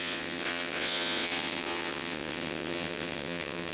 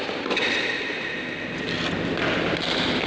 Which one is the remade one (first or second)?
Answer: first